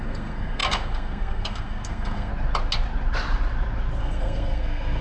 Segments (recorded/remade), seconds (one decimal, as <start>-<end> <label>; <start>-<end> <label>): 0.0-2.3 remade; 2.3-4.0 recorded; 4.0-5.0 remade